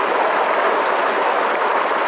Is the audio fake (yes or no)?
no